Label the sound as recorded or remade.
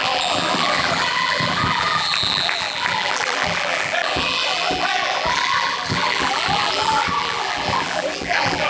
remade